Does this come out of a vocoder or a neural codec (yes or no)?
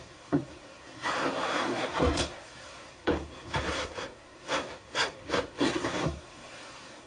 yes